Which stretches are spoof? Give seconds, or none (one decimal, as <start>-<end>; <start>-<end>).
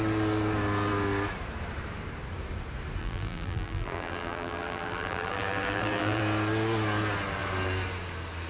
3.0-6.2